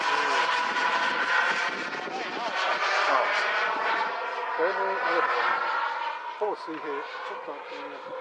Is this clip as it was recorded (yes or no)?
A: yes